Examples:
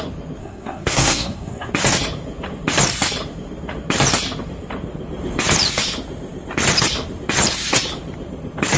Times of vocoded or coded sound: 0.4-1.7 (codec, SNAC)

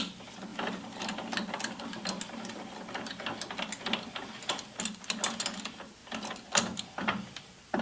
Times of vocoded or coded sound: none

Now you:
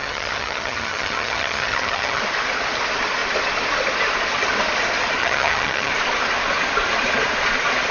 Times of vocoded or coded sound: 0.0-2.2 (vocoder, HiFi-GAN); 5.2-5.9

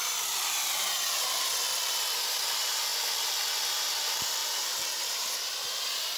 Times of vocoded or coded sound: 4.4-5.3 (vocoder, BigVGAN v2)

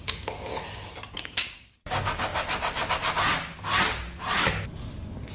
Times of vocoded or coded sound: 0.0-0.5 (codec, DAC); 1.1-2.3